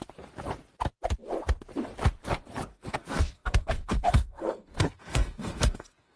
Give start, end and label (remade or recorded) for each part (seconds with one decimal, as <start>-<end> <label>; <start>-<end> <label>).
0.0-2.7 recorded; 2.7-6.2 remade